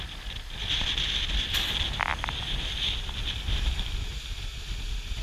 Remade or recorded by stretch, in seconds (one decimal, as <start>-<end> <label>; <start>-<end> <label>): 0.0-5.2 recorded